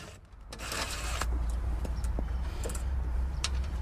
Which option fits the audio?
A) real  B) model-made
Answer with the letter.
B